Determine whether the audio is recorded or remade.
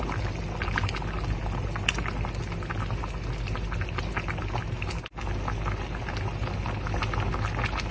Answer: recorded